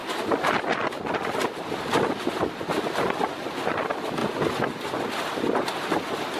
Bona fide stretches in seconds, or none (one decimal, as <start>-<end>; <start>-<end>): 0.0-6.4